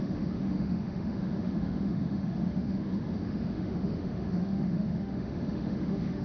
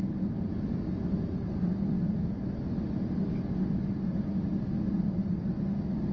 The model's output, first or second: first